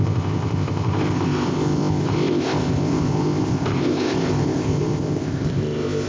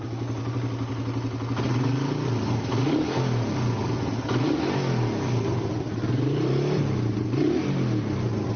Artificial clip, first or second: first